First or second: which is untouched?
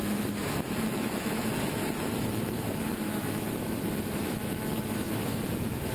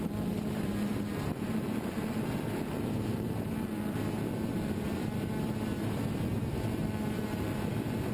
second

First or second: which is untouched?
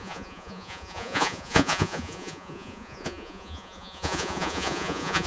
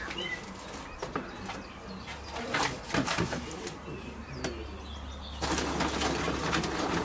second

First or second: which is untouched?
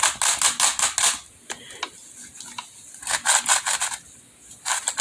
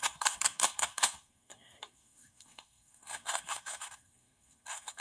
first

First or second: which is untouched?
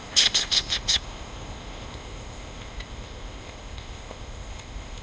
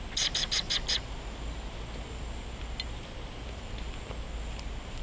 second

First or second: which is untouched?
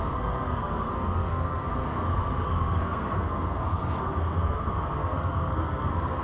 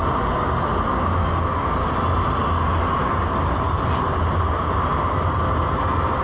second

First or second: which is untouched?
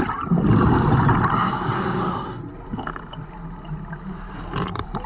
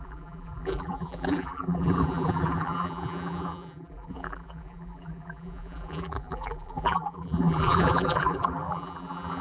first